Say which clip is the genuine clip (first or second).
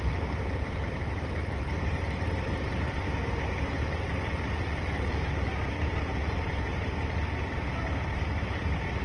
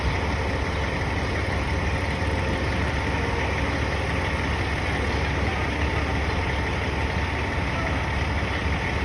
second